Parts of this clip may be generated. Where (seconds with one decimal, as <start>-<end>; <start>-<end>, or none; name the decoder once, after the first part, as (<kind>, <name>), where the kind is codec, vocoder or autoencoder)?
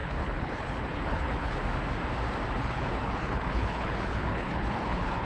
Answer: 0.0-1.6 (codec, HILCodec); 2.6-5.3